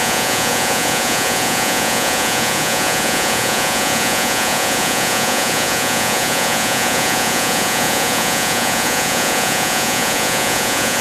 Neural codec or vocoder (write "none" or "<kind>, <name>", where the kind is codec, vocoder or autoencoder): vocoder, Vocos